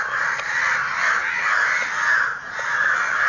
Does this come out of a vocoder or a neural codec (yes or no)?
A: no